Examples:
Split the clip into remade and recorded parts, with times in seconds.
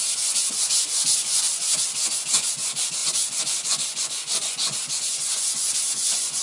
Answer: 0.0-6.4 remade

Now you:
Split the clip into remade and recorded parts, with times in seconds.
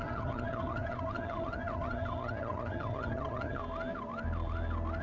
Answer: 0.0-3.6 remade; 3.6-5.0 recorded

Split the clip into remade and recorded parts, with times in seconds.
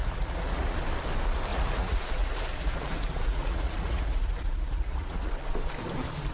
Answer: 0.0-0.8 remade; 0.8-1.5 recorded; 1.5-5.3 remade; 5.3-6.3 recorded